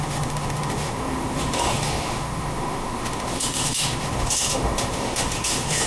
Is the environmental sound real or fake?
fake